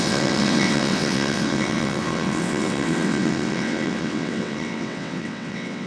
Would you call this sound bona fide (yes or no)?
no